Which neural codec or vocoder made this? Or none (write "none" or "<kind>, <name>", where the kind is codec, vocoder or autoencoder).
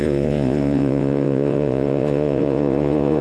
vocoder, Vocos